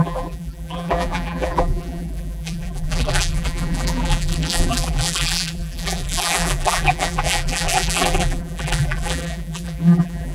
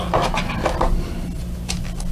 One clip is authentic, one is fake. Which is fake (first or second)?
first